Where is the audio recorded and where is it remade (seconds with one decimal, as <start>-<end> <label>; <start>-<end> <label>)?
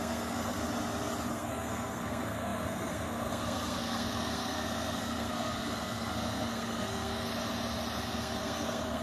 0.0-0.6 remade; 0.6-1.3 recorded; 1.3-7.3 remade; 7.3-8.0 recorded; 8.0-9.0 remade